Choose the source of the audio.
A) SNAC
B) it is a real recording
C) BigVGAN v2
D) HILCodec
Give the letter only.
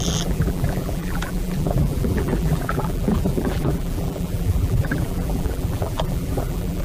C